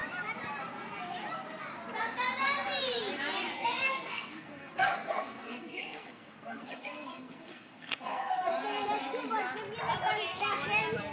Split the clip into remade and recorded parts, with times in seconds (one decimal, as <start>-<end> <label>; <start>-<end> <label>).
0.0-3.5 recorded; 3.5-8.5 remade; 8.5-11.1 recorded